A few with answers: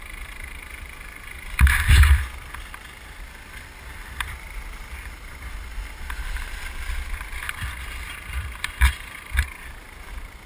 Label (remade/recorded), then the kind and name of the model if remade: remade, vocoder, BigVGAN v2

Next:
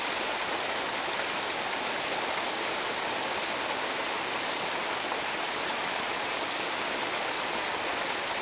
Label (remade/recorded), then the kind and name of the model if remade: recorded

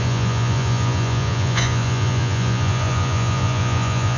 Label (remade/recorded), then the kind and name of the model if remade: remade, vocoder, Vocos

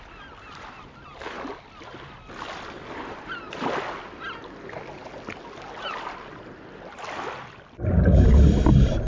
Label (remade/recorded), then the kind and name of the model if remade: recorded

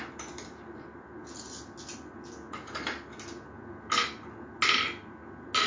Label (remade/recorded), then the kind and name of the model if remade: recorded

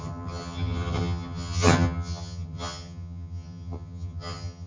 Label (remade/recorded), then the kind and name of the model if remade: remade, vocoder, HiFi-GAN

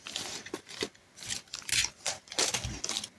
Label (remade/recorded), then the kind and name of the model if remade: recorded